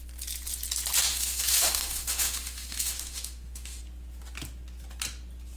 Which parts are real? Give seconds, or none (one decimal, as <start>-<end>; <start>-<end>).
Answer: 0.0-1.1; 3.8-5.6